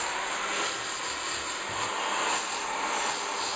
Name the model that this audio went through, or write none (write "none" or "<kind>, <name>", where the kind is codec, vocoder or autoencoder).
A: none